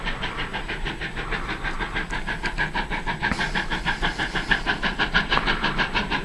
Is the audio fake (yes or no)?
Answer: no